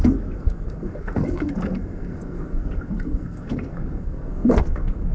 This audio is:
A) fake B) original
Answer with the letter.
A